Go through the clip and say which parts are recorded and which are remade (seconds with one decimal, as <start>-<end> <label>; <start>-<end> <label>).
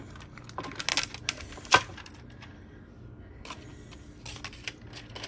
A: 0.0-5.3 recorded